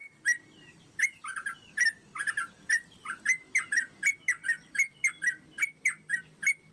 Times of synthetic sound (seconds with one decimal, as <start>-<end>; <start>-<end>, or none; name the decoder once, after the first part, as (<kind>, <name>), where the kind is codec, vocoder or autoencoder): none